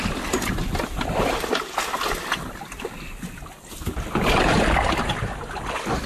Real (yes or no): yes